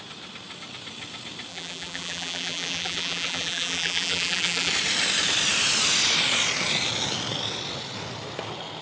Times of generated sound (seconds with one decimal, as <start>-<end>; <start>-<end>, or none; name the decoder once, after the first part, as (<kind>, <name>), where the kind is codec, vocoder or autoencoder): 1.5-4.7 (vocoder, BigVGAN v2)